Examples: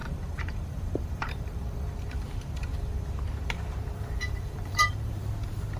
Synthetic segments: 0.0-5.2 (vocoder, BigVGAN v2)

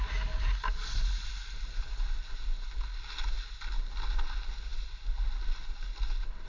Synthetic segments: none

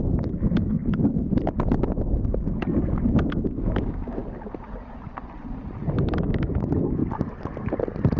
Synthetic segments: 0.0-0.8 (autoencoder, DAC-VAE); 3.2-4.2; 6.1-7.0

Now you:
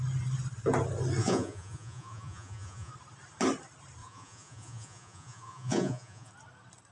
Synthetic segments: 1.2-2.9 (vocoder, Vocos); 4.0-6.3

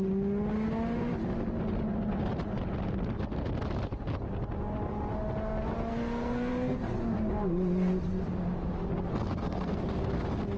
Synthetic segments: 5.9-6.5 (codec, SNAC); 9.1-10.1

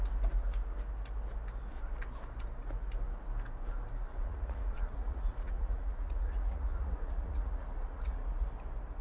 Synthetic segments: 4.1-8.5 (vocoder, Vocos)

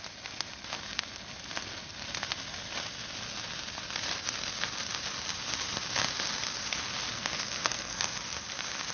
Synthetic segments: 7.1-8.2 (codec, SNAC)

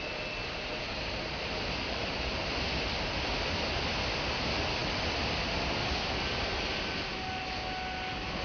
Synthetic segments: 0.4-2.2 (vocoder, BigVGAN v2)